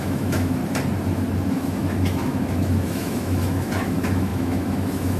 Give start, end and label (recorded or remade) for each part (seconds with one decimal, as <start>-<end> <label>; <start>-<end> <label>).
0.0-0.6 remade; 0.6-1.5 recorded; 1.5-5.2 remade